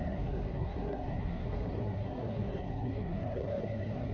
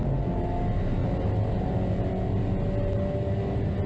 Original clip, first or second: second